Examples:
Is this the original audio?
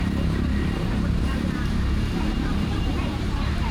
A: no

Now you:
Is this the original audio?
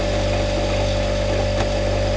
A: yes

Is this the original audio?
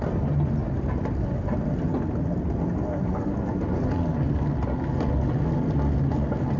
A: yes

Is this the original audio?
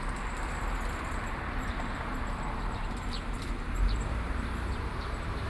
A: no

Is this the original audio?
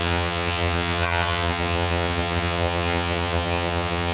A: no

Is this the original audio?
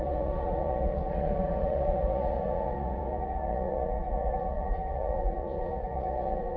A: no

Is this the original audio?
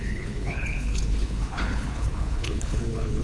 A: no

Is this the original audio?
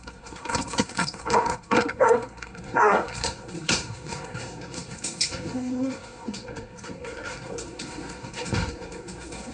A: no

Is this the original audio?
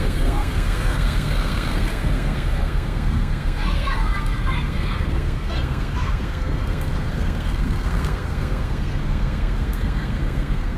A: no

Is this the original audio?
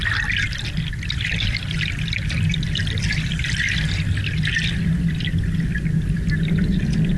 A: yes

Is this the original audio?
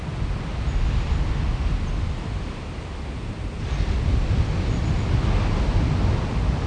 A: yes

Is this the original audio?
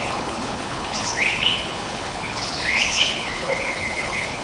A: no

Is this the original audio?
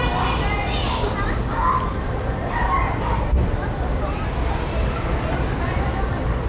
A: no